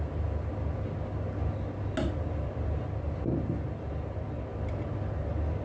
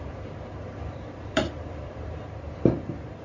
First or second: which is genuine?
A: first